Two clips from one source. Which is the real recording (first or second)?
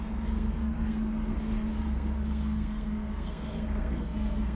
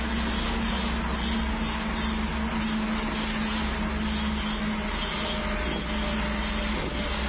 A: second